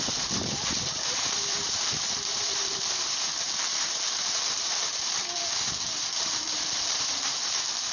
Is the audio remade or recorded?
remade